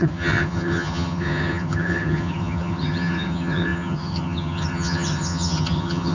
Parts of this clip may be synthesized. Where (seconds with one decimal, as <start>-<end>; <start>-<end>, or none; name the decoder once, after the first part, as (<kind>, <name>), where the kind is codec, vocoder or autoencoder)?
0.0-6.1 (vocoder, HiFi-GAN)